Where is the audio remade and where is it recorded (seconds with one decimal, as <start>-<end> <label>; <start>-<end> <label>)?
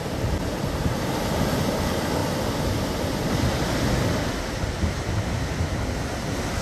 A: 0.0-6.6 recorded